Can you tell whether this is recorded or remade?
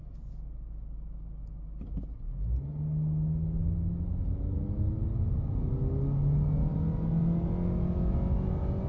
recorded